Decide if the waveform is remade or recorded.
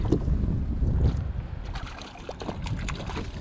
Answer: recorded